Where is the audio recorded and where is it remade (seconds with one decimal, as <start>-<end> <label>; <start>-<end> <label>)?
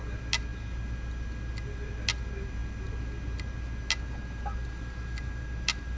0.0-6.0 recorded